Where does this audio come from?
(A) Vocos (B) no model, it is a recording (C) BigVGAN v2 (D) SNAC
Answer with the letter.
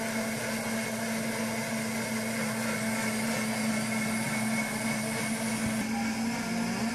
B